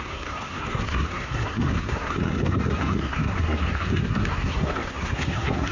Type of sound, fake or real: fake